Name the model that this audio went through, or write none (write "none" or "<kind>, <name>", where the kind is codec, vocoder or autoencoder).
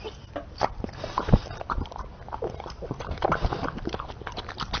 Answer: none